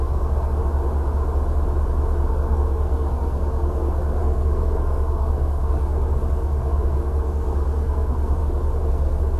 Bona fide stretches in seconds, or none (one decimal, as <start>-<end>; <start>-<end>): 0.6-2.3; 8.4-8.9